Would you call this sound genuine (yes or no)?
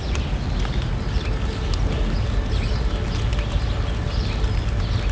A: yes